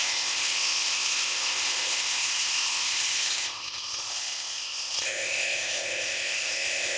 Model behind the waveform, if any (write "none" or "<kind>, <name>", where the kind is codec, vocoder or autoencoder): codec, ZipCodec